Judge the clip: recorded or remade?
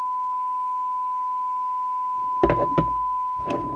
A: recorded